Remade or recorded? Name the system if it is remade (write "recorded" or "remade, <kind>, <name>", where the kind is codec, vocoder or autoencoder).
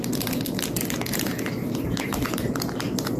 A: recorded